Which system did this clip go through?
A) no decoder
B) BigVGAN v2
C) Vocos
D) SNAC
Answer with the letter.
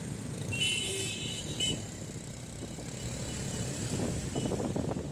B